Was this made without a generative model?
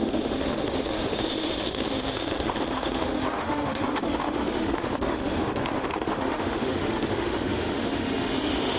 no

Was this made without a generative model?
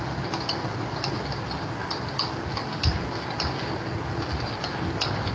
yes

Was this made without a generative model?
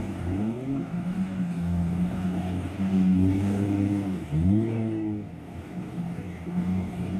no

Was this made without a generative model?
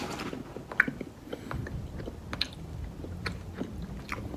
yes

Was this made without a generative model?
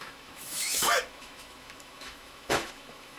no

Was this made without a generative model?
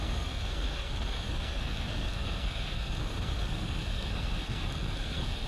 no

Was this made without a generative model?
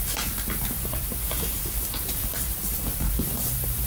no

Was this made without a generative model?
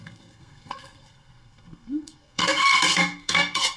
no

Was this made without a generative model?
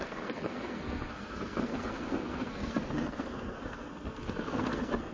no